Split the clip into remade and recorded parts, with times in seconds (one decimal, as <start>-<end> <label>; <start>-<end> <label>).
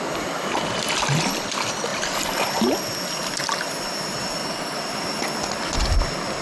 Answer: 0.0-4.4 recorded; 4.4-5.2 remade; 5.2-6.4 recorded